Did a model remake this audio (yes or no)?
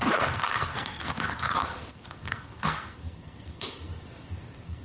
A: yes